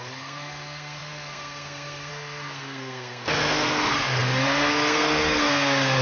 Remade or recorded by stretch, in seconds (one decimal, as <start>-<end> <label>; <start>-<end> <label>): 0.0-6.0 remade